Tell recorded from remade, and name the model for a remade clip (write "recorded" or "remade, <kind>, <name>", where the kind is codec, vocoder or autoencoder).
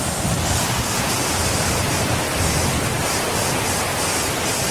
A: remade, vocoder, BigVGAN v2